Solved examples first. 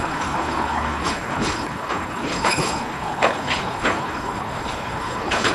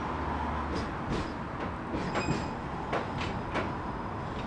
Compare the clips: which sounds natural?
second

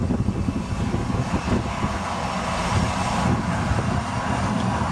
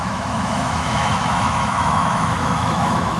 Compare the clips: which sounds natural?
first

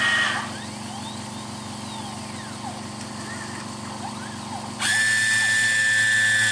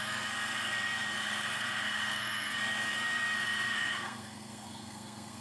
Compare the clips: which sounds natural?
first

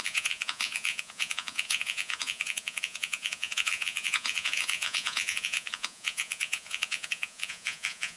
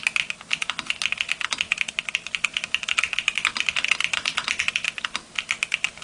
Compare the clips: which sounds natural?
second